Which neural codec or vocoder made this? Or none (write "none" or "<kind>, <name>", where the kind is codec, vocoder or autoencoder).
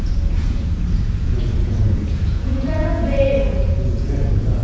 vocoder, Vocos